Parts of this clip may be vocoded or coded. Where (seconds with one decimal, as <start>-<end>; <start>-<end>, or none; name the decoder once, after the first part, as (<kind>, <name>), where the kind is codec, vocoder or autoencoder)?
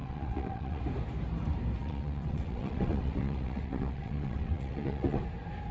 0.0-0.8 (vocoder, WaveNeXt); 1.8-5.2